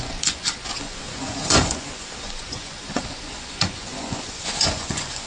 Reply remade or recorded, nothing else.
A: remade